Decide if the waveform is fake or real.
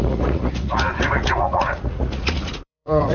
fake